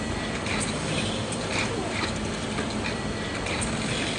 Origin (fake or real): real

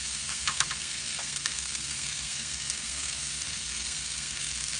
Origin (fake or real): fake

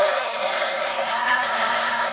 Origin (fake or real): fake